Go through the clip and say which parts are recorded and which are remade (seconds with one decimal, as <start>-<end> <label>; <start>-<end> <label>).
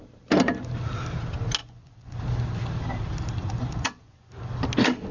0.0-1.6 recorded; 1.6-2.2 remade; 2.2-3.4 recorded; 3.4-4.3 remade; 4.3-5.1 recorded